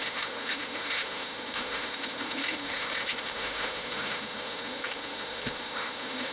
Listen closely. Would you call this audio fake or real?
fake